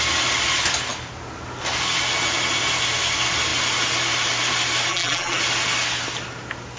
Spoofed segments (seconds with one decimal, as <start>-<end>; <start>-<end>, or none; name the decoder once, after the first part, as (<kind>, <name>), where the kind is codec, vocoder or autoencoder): 4.9-5.4 (vocoder, BigVGAN v2)